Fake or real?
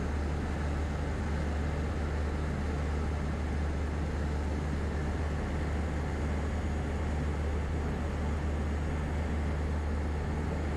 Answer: real